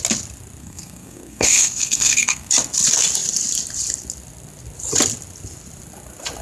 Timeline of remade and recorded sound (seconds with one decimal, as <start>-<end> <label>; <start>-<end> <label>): 0.0-0.6 recorded; 0.6-2.5 remade; 2.5-6.4 recorded